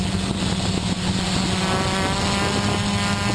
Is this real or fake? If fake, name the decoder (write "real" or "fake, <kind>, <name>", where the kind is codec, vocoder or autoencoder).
real